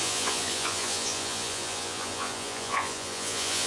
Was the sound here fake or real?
fake